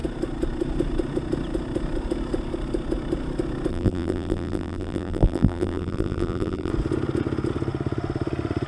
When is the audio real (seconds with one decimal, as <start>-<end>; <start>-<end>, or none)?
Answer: 0.0-3.7; 6.7-8.7